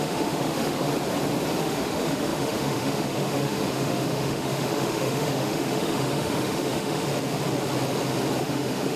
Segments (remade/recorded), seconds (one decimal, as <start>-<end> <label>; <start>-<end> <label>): 0.0-0.9 remade; 0.9-1.6 recorded; 1.6-7.1 remade; 7.1-8.4 recorded; 8.4-9.0 remade